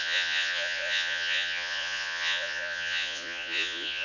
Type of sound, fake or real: fake